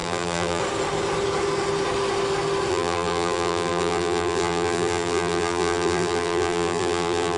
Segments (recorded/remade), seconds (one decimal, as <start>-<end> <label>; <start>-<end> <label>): 0.0-0.6 remade; 0.6-2.7 recorded; 2.7-7.4 remade